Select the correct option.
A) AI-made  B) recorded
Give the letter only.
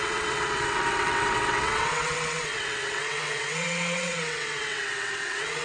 A